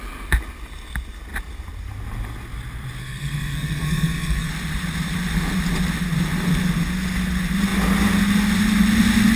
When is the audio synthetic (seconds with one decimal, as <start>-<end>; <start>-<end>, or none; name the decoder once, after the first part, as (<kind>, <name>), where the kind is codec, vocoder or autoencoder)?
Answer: 3.0-4.5 (codec, SNAC)